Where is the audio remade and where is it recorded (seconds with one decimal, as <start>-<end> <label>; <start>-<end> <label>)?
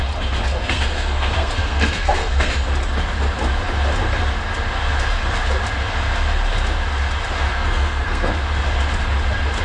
0.0-0.5 recorded; 0.5-2.5 remade; 2.5-7.5 recorded; 7.5-8.3 remade; 8.3-9.6 recorded